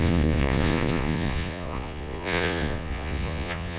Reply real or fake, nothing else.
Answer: fake